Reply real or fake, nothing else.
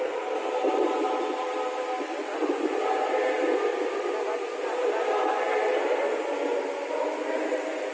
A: real